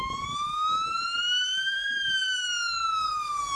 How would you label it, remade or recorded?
remade